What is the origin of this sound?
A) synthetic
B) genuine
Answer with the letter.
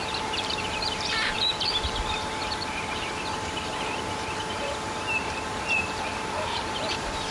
A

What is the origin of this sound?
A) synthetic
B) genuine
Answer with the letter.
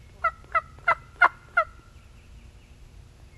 B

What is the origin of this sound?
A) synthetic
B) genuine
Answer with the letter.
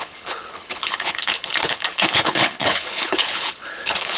A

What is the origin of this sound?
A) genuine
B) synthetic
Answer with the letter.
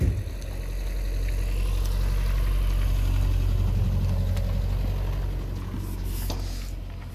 A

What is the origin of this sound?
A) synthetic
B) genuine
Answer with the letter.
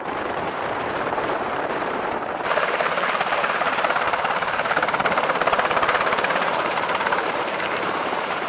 A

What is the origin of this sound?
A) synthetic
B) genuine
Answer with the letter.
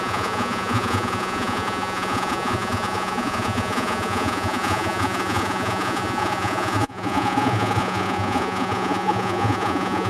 A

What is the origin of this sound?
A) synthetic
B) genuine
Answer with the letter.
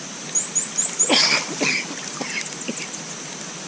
B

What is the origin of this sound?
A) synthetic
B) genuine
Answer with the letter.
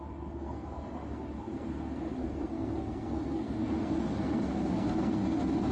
A